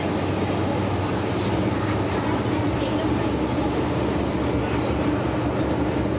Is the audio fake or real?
real